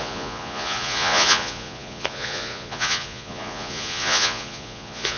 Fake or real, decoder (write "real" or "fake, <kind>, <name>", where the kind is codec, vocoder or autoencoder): fake, vocoder, Vocos